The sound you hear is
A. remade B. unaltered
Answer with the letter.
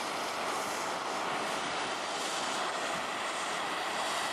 B